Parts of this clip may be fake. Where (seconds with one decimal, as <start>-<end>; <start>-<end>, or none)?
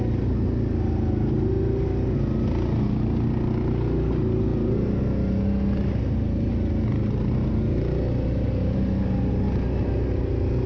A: none